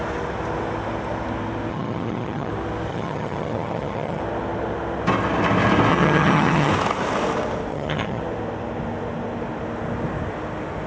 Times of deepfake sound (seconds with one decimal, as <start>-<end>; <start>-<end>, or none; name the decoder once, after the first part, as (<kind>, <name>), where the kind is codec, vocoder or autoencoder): 1.7-2.5 (vocoder, HiFi-GAN); 2.9-4.2; 5.9-6.7; 7.7-8.2